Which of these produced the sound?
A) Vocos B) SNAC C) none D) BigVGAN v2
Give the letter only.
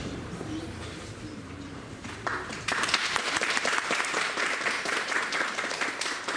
D